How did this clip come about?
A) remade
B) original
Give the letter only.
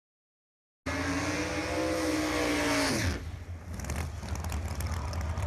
B